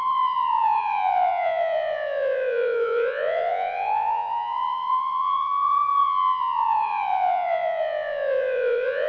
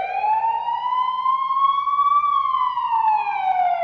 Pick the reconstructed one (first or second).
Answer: first